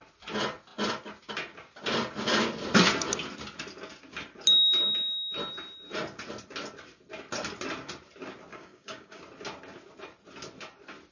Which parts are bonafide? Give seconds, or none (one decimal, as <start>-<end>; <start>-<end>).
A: 0.0-8.5; 9.2-11.1